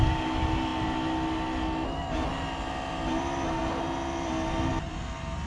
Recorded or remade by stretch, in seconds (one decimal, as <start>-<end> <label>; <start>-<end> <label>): 0.0-5.5 recorded